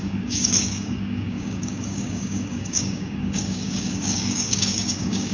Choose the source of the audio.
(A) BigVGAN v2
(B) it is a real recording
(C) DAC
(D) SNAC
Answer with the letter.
C